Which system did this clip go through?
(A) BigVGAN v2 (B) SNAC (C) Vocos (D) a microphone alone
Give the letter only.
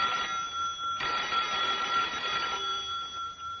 D